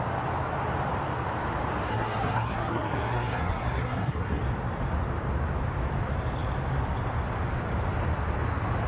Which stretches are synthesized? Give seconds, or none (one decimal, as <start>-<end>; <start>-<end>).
1.9-4.4